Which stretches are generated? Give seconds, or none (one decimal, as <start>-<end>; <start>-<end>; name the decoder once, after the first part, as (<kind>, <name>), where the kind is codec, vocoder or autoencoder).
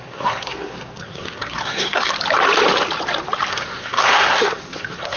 0.0-2.1 (codec, SNAC); 3.5-5.2